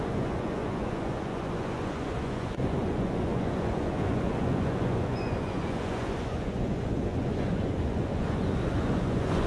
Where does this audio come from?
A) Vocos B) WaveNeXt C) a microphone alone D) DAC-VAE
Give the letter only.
A